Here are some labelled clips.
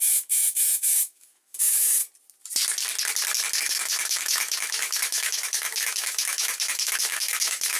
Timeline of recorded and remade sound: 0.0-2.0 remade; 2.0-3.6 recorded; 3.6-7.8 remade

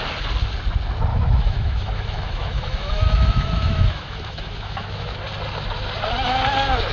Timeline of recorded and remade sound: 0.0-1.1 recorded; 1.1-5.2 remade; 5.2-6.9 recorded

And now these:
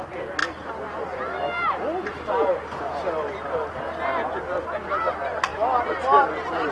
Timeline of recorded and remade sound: 0.0-6.7 recorded

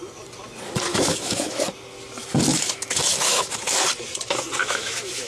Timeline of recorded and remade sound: 0.0-0.9 recorded; 0.9-1.6 remade; 1.6-2.5 recorded; 2.5-3.5 remade; 3.5-4.6 recorded; 4.6-5.3 remade

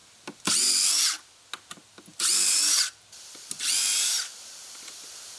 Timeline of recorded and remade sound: 0.0-5.4 recorded

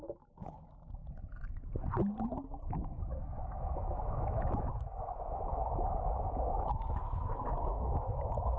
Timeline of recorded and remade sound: 0.0-1.0 remade; 1.0-2.7 recorded; 2.7-8.6 remade

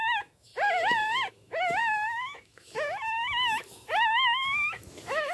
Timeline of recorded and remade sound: 0.0-0.5 remade; 0.5-1.3 recorded; 1.3-5.3 remade

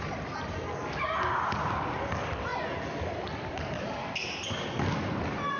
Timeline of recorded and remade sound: 0.0-5.6 recorded